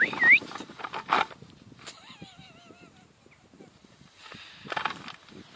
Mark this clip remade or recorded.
recorded